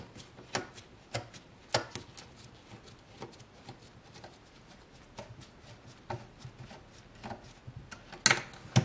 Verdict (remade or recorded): recorded